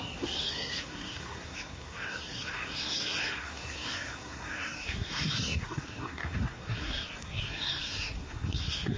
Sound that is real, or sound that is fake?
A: fake